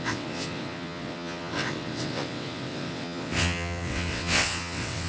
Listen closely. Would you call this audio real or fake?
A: fake